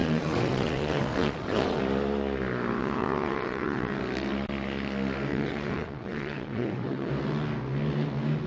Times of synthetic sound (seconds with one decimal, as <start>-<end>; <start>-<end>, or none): 0.0-1.8; 2.8-4.0; 5.3-7.1